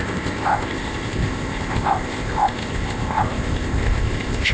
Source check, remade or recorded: remade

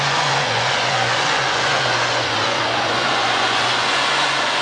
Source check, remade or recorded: remade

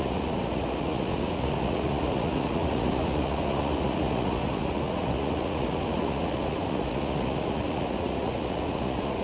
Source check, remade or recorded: remade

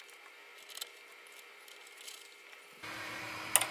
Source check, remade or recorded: recorded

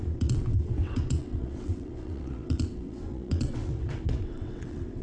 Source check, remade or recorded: remade